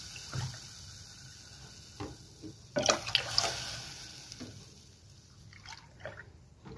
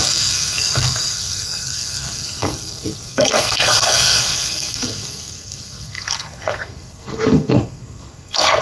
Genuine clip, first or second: first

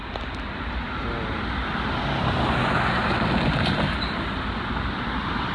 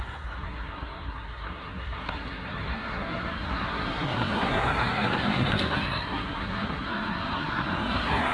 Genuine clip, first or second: first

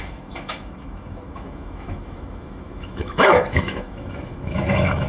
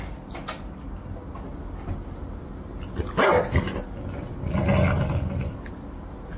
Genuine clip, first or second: second